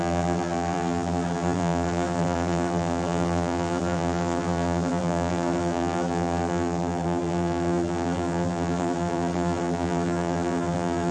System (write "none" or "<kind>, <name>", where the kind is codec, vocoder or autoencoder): vocoder, BigVGAN v2